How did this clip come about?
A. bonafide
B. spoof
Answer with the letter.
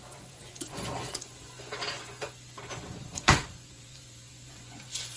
B